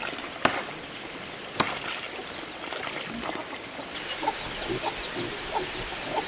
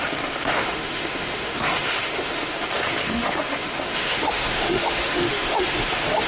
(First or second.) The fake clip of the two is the second